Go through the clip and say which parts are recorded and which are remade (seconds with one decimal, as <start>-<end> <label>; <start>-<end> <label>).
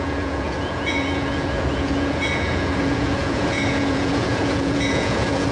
0.0-5.5 remade